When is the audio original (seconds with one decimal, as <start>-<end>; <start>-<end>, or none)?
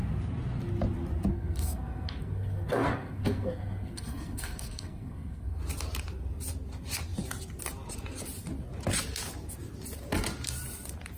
0.0-1.3; 5.6-11.2